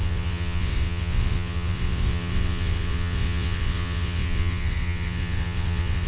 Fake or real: fake